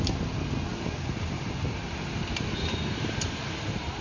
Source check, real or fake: real